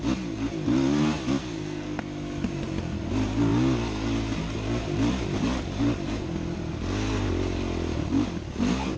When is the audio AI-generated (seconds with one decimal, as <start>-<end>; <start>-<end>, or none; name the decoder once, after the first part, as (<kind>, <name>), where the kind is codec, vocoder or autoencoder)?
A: 1.4-2.0 (codec, SNAC)